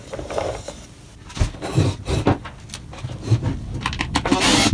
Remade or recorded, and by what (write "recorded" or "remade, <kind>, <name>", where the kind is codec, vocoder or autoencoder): recorded